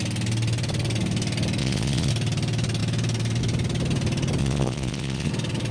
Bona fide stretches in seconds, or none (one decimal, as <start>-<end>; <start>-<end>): 0.0-1.6; 2.1-4.4; 5.3-5.7